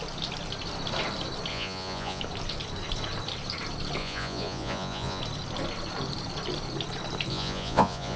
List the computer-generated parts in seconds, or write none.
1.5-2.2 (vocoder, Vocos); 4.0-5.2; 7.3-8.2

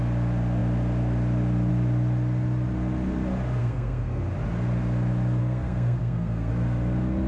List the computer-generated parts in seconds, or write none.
3.6-4.2 (codec, SNAC); 5.4-6.5

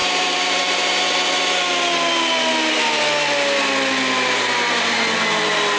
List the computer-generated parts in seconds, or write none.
0.0-0.9 (vocoder, BigVGAN v2)

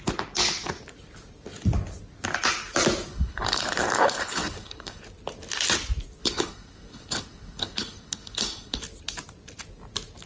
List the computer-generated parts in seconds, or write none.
3.1-5.0 (codec, HILCodec); 6.2-8.8

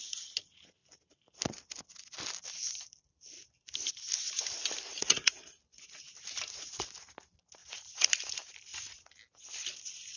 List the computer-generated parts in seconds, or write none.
4.9-5.4 (vocoder, Vocos); 7.6-8.1